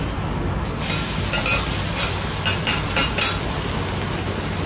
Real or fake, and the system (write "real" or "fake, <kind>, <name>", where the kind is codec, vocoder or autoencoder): real